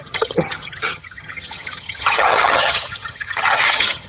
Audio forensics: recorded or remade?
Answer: remade